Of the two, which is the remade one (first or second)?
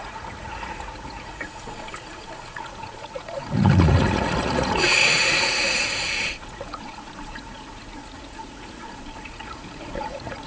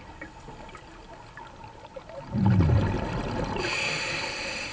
first